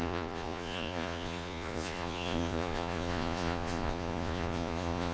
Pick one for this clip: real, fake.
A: fake